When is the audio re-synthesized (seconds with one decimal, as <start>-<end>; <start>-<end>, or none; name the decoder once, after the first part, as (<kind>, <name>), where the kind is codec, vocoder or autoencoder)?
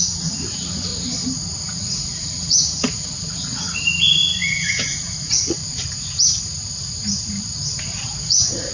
0.0-0.9 (vocoder, Vocos); 1.5-5.6; 8.2-8.7